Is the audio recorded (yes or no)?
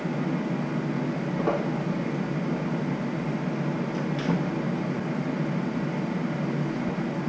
yes